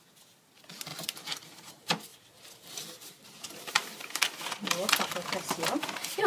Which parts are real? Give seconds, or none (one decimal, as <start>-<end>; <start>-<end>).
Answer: 0.0-0.9; 1.7-2.1; 4.5-6.3